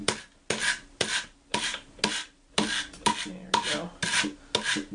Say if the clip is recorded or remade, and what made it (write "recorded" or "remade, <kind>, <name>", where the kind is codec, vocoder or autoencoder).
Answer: recorded